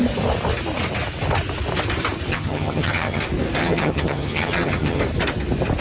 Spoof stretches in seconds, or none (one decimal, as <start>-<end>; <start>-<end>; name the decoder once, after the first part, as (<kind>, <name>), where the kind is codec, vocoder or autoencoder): 2.3-3.2 (vocoder, HiFi-GAN); 3.6-5.0